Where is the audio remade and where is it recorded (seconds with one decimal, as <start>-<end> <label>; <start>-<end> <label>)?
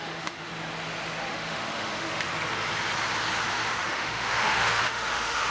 0.0-0.5 remade; 0.5-1.3 recorded; 1.3-2.3 remade; 2.3-3.5 recorded; 3.5-5.5 remade